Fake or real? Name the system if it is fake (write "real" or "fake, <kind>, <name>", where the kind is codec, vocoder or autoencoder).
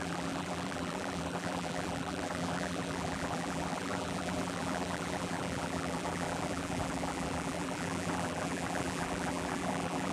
fake, vocoder, BigVGAN v2